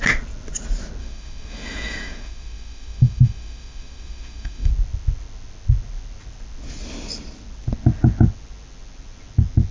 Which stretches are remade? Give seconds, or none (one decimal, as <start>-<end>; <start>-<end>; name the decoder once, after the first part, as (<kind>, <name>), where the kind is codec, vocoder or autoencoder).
1.0-4.7 (autoencoder, DAC-VAE)